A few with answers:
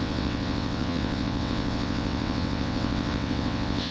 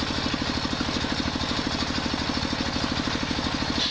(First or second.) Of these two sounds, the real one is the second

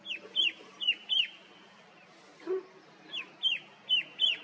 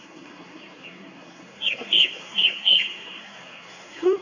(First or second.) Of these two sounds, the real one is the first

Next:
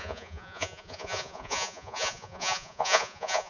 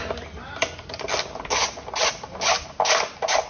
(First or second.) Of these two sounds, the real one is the second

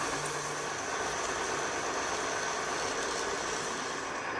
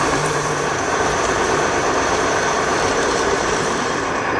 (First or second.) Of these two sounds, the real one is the first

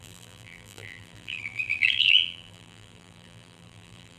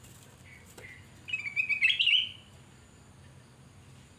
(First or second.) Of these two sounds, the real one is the second